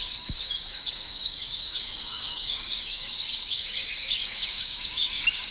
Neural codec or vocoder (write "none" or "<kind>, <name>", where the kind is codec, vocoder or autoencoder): codec, DAC